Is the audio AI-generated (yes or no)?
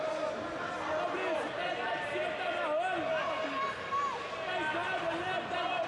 no